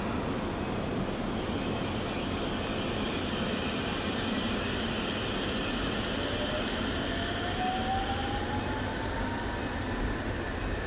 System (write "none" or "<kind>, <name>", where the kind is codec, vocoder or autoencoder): none